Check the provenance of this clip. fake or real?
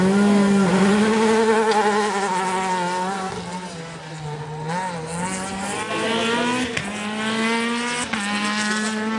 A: real